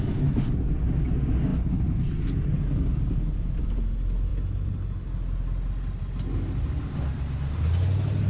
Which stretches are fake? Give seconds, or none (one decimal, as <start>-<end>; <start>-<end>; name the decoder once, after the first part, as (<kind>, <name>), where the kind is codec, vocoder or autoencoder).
none